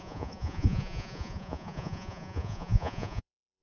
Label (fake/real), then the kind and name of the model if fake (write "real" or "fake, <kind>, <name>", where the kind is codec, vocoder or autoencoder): fake, vocoder, Vocos